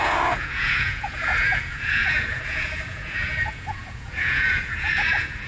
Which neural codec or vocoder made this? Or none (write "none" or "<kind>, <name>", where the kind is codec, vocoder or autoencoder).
vocoder, Vocos